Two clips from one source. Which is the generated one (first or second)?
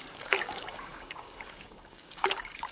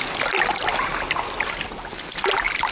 first